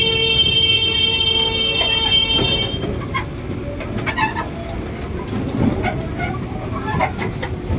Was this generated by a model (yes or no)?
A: no